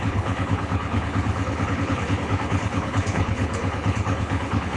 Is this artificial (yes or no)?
yes